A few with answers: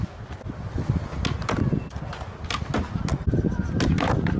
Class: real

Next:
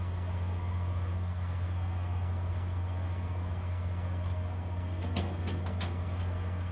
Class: fake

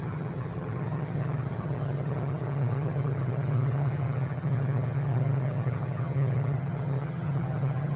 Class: fake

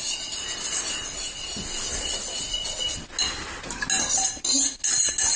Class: real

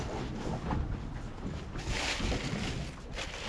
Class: real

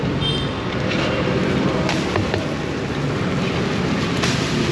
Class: real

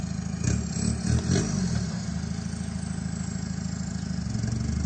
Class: real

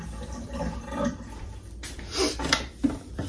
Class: fake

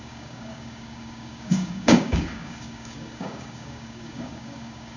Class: fake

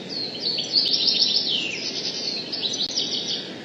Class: real